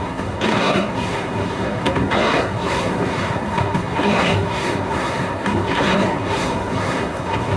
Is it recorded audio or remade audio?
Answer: remade